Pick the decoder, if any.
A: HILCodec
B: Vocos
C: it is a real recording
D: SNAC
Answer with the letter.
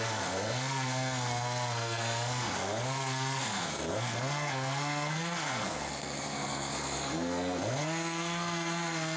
D